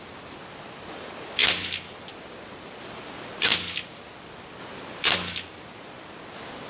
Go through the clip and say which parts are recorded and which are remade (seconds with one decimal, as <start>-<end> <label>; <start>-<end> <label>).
0.0-1.4 remade; 1.4-2.8 recorded; 2.8-3.5 remade; 3.5-6.0 recorded; 6.0-6.7 remade